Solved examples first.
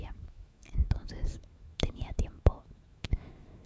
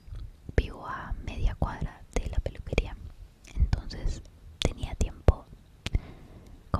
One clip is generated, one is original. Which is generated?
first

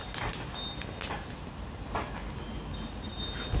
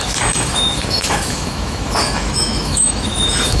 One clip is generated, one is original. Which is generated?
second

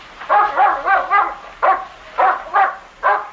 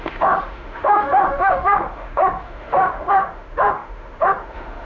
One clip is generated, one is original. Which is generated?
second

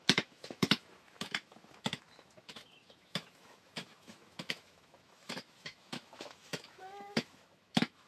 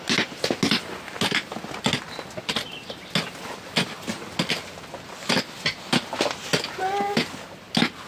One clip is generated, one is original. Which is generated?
first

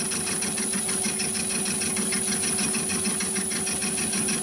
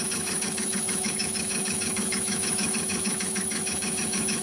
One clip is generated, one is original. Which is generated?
second